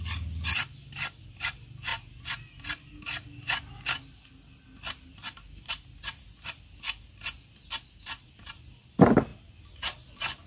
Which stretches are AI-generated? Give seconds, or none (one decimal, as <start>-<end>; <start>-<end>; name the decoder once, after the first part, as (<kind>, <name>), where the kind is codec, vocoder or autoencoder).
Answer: none